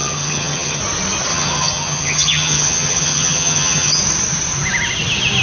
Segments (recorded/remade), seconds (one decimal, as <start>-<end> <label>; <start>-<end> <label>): 0.0-0.8 remade; 0.8-1.3 recorded; 1.3-4.0 remade; 4.0-5.4 recorded